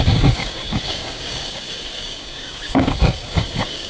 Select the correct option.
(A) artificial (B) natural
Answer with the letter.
A